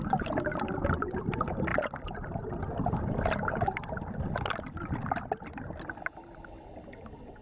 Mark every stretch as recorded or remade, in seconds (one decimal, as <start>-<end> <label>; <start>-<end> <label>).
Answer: 0.0-7.4 recorded